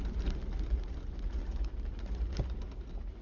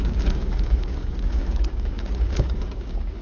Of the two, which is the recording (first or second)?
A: first